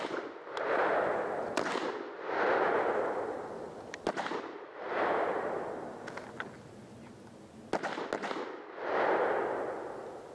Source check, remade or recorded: recorded